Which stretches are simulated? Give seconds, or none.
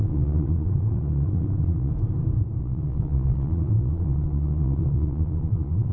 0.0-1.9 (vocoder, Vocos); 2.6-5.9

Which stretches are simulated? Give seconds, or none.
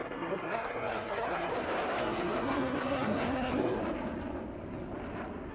0.0-1.5 (codec, SNAC); 2.0-3.8